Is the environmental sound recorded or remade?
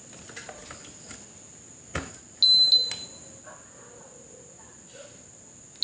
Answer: recorded